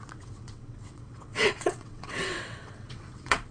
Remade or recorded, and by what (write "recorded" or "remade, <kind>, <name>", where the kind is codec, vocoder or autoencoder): remade, vocoder, WaveNeXt